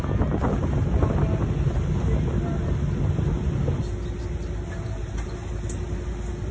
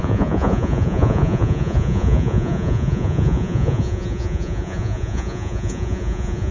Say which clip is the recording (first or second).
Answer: first